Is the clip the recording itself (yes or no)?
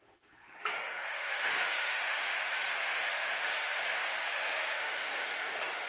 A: no